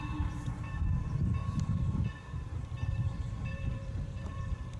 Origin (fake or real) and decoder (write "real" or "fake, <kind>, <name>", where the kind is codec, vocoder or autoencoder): fake, vocoder, BigVGAN v2